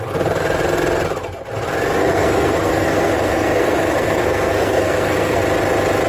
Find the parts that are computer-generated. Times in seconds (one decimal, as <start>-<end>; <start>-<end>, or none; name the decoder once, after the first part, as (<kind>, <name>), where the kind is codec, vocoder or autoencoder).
2.0-5.4 (codec, SNAC)